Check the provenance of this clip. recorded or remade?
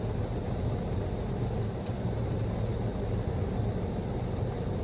recorded